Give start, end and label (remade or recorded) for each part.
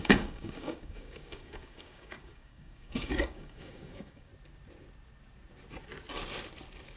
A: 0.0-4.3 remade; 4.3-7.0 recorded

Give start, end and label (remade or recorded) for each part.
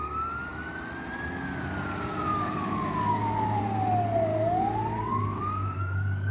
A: 0.0-2.3 recorded; 2.3-3.6 remade; 3.6-4.3 recorded; 4.3-6.3 remade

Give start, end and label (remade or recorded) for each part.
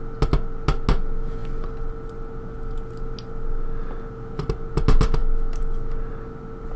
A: 0.0-6.8 recorded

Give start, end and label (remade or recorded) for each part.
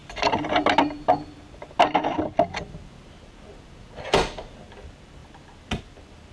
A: 0.0-6.3 recorded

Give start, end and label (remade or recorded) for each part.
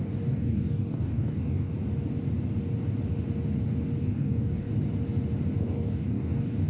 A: 0.0-1.7 remade; 1.7-4.0 recorded; 4.0-4.7 remade; 4.7-5.6 recorded; 5.6-6.7 remade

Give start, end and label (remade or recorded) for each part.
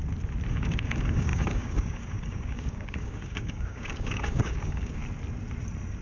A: 0.0-0.5 recorded; 0.5-5.0 remade; 5.0-6.0 recorded